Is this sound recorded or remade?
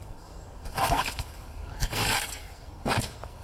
remade